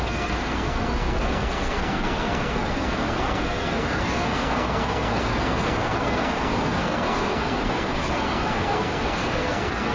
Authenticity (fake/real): fake